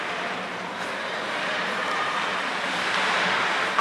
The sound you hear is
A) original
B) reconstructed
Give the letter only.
A